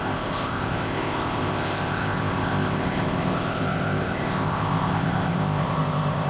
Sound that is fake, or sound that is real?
fake